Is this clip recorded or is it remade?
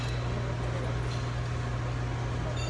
recorded